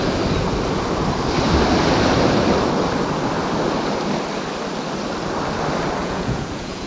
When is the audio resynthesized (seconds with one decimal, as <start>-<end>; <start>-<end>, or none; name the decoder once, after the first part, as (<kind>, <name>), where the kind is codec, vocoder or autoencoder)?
6.0-6.9 (vocoder, Vocos)